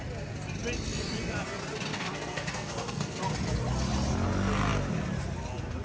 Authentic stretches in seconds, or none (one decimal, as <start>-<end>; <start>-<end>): 0.0-1.9; 3.2-5.8